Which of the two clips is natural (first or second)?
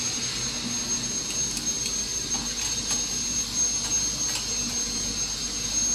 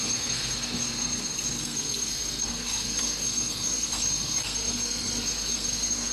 first